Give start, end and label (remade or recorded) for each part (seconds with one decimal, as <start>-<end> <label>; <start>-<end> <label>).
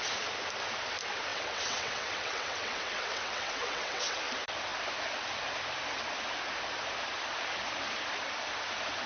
0.0-1.3 recorded; 1.3-4.2 remade; 4.2-9.1 recorded